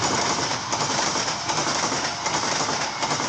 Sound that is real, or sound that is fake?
real